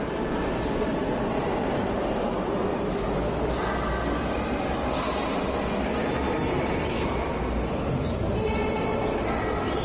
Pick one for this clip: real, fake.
real